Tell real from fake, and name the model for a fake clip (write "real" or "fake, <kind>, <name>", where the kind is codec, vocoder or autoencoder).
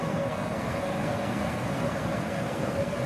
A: fake, codec, SNAC